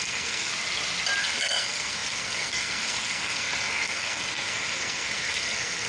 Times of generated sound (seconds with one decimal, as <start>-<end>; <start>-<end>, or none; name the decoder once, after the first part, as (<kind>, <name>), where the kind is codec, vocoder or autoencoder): 0.0-0.5 (codec, SNAC); 1.2-5.9